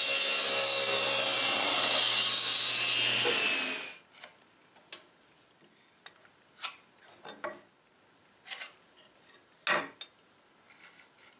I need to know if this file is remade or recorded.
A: recorded